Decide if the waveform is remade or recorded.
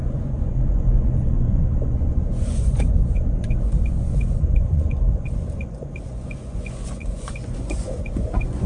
remade